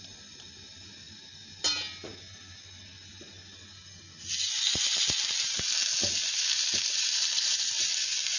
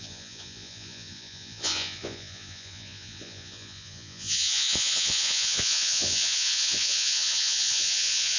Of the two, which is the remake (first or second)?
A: second